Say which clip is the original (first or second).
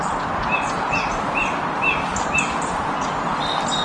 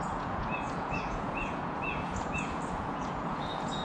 first